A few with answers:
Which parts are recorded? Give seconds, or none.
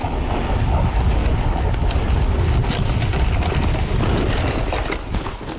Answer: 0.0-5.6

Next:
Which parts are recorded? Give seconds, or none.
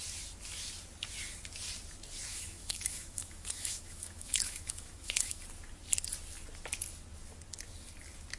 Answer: 0.0-2.3; 5.4-8.4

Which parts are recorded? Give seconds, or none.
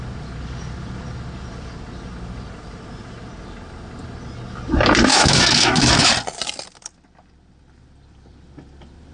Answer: 0.0-5.1; 6.1-9.1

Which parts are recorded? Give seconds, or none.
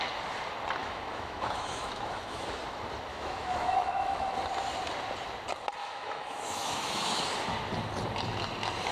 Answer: 0.0-0.8; 2.6-3.1; 4.3-5.8; 7.2-8.9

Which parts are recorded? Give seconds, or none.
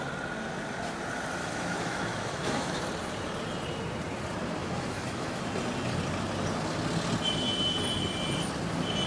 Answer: 0.0-1.4; 2.8-4.6; 5.4-9.1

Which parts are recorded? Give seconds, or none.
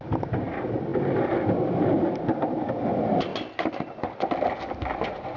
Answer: 0.0-5.4